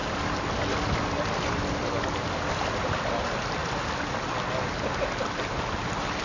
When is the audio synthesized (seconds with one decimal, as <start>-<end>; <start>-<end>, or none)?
none